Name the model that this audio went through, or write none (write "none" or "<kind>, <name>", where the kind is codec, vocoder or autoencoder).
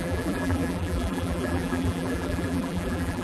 vocoder, BigVGAN v2